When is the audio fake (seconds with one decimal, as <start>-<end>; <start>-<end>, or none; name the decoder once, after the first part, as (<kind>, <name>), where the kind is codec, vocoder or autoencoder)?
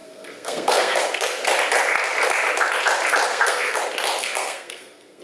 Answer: 0.0-1.0 (codec, SNAC); 3.3-3.8; 4.2-5.2